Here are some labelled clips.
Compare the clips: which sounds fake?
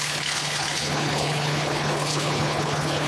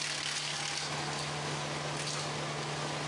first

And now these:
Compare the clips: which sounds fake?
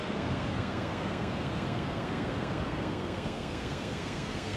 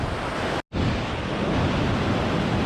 first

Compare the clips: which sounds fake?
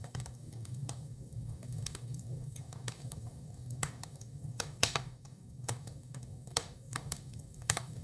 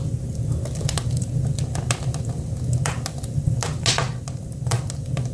first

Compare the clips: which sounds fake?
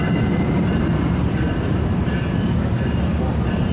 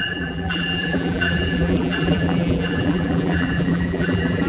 second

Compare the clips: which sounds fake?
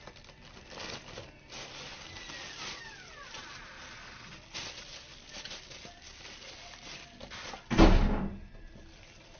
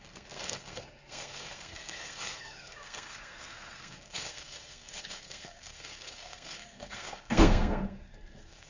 second